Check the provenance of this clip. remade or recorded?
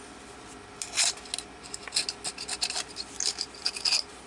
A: recorded